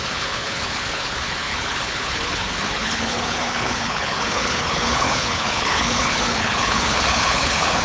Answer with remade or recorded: remade